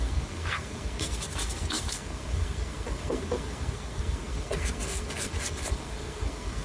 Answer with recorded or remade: remade